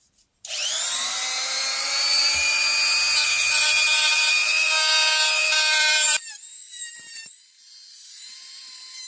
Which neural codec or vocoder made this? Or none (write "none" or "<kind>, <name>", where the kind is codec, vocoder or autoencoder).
vocoder, BigVGAN v2